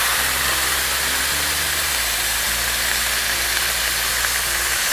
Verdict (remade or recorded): recorded